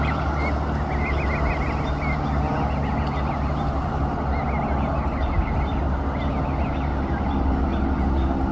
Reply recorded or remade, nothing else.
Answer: recorded